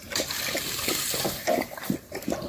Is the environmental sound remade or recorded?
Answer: recorded